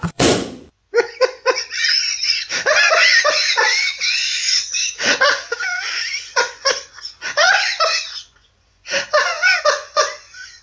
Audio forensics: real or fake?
fake